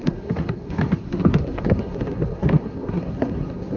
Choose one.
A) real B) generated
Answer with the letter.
B